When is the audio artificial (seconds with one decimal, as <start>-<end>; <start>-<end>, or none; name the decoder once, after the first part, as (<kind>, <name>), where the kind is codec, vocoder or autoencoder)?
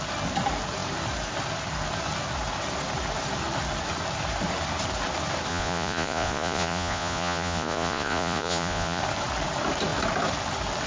5.5-9.0 (vocoder, Vocos)